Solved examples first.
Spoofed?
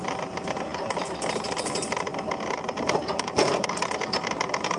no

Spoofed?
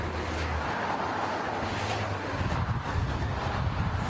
no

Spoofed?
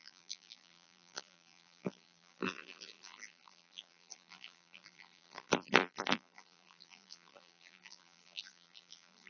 yes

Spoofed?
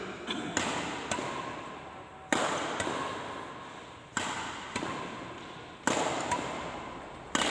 no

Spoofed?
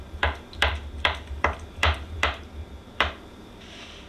yes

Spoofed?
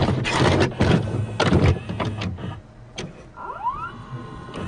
no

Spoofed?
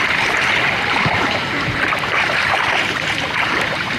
yes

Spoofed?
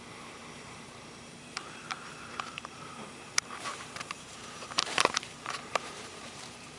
yes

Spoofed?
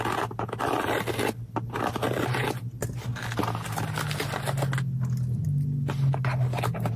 no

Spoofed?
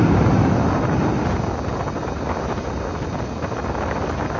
no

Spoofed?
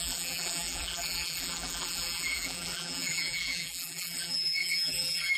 yes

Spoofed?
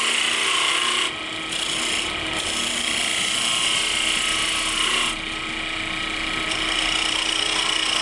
no